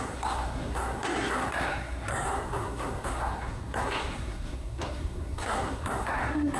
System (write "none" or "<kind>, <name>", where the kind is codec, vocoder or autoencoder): codec, SNAC